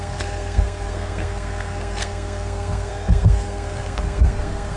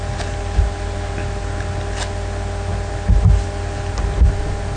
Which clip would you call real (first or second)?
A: second